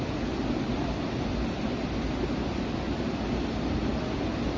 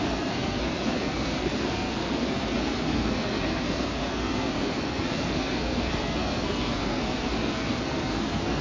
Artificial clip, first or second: second